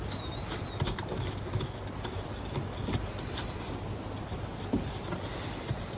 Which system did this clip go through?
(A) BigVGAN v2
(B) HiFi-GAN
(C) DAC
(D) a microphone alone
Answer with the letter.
D